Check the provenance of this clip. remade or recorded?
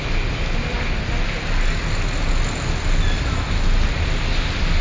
recorded